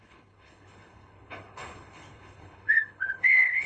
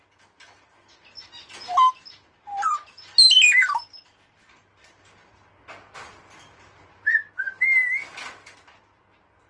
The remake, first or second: first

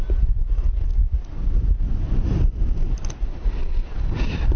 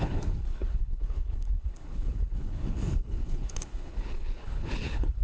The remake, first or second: second